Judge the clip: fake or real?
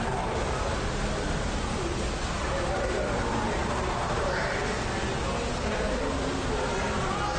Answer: real